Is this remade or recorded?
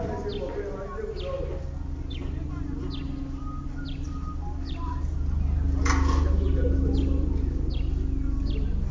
recorded